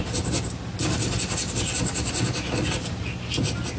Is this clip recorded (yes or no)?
yes